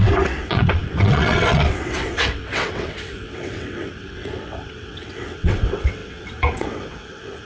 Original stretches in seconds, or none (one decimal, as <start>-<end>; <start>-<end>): none